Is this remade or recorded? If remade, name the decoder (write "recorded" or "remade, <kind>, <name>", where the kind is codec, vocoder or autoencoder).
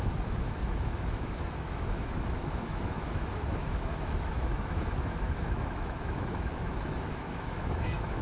remade, autoencoder, DAC-VAE